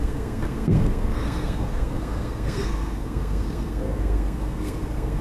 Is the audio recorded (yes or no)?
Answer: no